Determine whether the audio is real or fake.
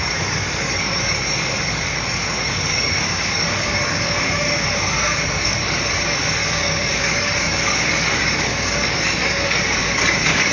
fake